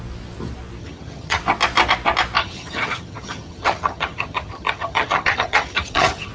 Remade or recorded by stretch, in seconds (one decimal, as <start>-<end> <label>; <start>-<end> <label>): 0.0-0.8 recorded; 0.8-1.4 remade; 1.4-2.4 recorded; 2.4-6.3 remade